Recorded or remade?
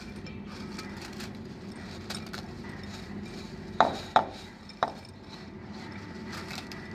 remade